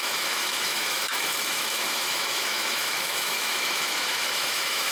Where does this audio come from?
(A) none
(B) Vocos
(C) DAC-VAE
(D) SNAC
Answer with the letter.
C